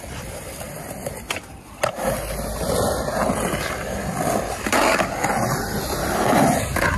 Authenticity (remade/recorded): recorded